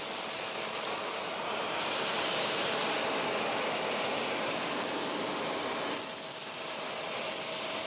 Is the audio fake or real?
real